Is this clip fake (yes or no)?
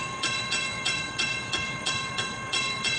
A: yes